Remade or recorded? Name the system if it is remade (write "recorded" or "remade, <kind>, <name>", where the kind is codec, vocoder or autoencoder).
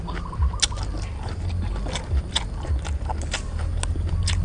recorded